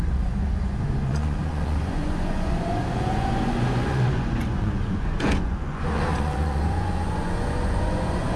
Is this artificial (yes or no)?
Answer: yes